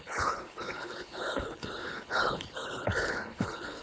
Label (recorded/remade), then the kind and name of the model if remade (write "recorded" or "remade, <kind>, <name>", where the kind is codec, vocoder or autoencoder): remade, codec, HILCodec